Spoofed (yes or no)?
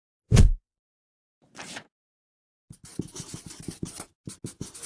no